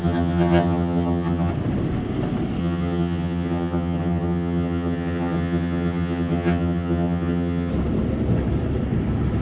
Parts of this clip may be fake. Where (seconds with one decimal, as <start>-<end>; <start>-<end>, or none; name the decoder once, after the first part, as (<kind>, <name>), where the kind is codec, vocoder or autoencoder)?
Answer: 0.0-1.5 (vocoder, HiFi-GAN); 2.6-7.7